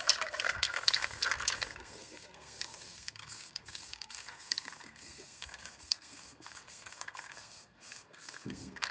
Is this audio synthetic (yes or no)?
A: yes